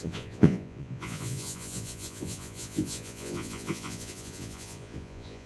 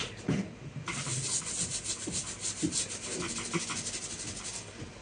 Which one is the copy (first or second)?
first